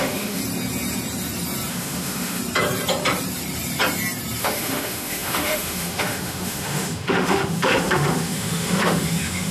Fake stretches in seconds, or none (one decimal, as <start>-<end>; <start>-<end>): 0.0-0.4; 1.7-2.4; 4.4-9.5